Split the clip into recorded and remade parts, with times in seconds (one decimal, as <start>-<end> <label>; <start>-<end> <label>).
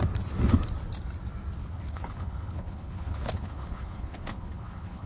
0.0-1.6 recorded; 1.6-5.1 remade